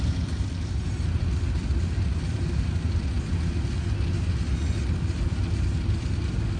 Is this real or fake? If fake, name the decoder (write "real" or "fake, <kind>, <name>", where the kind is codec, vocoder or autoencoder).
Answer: real